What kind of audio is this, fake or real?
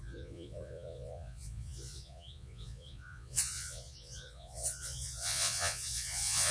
fake